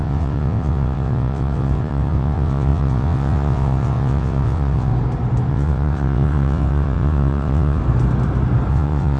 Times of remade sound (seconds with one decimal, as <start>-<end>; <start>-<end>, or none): 0.0-4.9; 5.5-7.8; 8.7-9.2